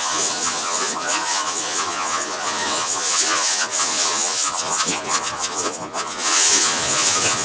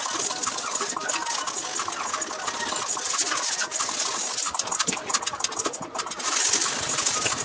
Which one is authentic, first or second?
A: second